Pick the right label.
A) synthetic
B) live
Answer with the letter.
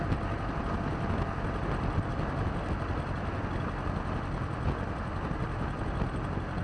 B